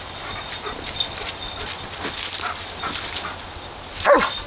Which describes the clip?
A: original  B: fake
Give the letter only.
A